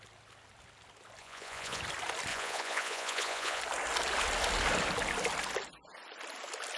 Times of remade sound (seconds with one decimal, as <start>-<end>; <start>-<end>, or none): 1.2-1.8; 2.3-3.6